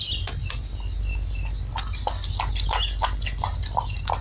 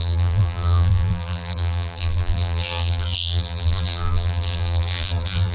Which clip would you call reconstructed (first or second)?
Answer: second